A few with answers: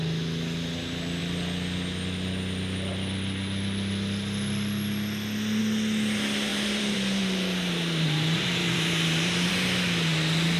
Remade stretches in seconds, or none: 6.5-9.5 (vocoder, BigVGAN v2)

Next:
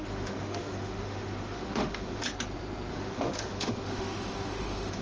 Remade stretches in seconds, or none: 0.0-2.2 (autoencoder, DAC-VAE); 2.9-5.0

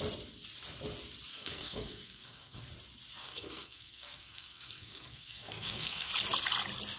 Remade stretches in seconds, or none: 1.3-2.7 (codec, SNAC); 3.2-6.1

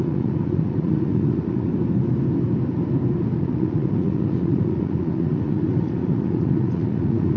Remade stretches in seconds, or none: 0.0-1.7 (vocoder, Vocos); 3.4-7.4

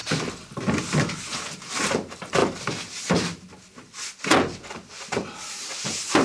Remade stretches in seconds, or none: 1.2-2.4 (vocoder, BigVGAN v2); 4.7-6.2